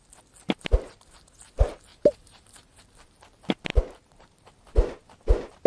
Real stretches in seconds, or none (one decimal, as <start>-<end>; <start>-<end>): 0.0-1.9; 2.8-3.7; 4.5-5.7